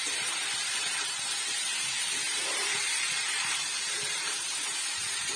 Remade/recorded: remade